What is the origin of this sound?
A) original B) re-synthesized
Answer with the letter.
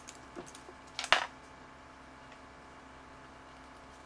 A